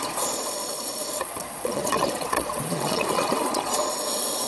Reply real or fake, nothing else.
fake